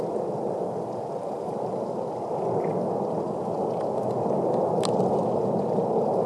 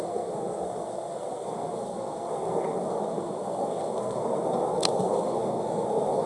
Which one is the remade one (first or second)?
second